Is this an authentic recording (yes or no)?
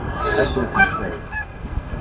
no